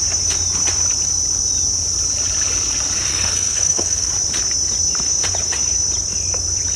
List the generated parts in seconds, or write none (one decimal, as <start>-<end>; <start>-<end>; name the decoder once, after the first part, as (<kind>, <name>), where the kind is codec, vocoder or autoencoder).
3.1-4.1 (codec, SNAC)